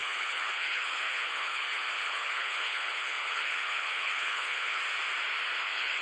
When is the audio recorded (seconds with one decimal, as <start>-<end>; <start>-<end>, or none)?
4.8-5.6